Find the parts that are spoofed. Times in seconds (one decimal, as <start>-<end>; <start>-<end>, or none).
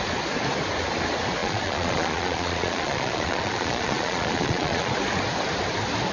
1.4-4.9